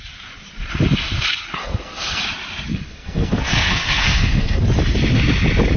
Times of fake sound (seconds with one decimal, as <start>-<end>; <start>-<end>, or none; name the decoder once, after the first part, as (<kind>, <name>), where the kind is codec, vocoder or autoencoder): 1.6-2.2 (codec, SNAC); 2.7-4.6